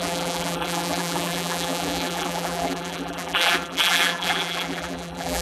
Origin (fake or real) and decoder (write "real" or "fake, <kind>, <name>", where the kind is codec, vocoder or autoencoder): fake, vocoder, BigVGAN v2